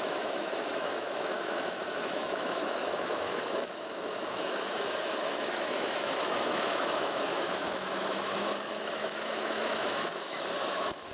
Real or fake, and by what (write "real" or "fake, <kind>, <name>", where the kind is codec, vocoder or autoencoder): fake, autoencoder, DAC-VAE